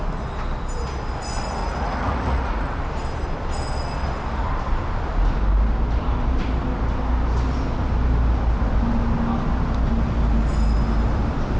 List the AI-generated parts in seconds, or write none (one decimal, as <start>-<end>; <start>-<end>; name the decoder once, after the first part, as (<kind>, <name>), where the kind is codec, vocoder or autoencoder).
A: 1.6-2.8 (vocoder, Vocos)